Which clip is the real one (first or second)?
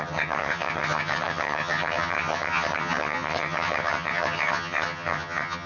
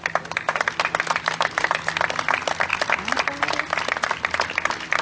second